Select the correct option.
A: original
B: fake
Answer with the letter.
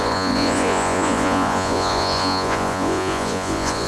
B